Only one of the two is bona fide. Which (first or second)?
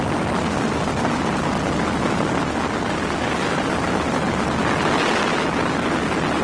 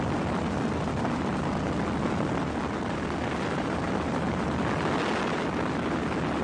first